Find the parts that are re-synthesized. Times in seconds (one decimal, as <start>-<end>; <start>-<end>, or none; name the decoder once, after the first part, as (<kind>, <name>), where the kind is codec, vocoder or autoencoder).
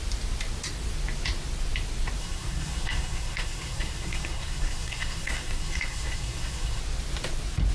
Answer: 2.2-6.8 (codec, SNAC)